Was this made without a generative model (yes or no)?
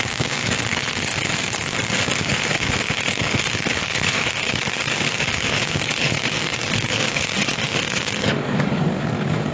no